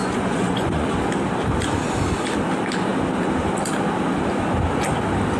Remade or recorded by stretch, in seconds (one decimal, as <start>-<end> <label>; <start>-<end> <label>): 0.0-1.0 remade; 1.0-5.4 recorded